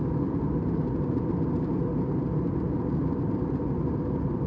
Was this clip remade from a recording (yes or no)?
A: no